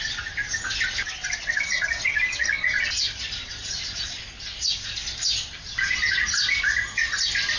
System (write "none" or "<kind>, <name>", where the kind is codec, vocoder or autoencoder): none